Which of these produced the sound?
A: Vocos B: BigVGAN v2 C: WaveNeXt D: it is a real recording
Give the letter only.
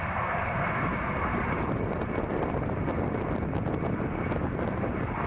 D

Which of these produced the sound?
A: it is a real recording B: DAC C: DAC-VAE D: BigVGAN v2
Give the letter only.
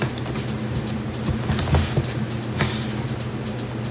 A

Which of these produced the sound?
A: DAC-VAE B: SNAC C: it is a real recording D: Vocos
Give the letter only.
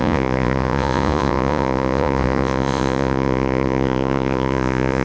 D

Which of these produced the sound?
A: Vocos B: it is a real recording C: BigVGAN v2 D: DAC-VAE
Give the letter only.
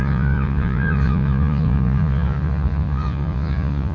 A